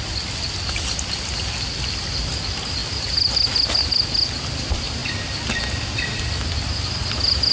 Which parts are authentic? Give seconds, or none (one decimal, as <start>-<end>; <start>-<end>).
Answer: 0.0-7.5